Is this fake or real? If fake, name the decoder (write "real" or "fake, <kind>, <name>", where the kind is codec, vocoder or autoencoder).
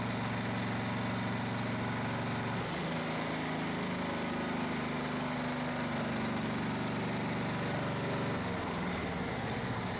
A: real